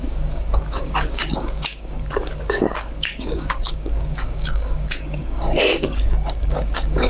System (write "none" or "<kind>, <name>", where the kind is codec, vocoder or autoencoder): codec, DAC